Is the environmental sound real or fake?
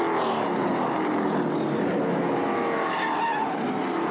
real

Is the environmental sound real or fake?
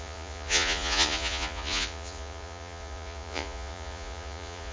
fake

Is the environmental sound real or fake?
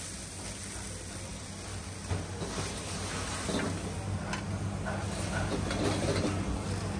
real